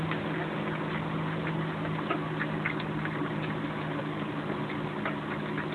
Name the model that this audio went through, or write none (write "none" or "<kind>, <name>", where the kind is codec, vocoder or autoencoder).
none